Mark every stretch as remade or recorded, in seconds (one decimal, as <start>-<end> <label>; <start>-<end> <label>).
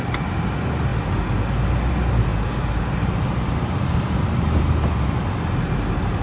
0.0-6.2 recorded